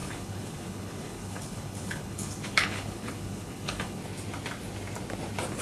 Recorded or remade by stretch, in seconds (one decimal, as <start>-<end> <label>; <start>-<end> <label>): 0.0-4.0 remade; 4.0-5.6 recorded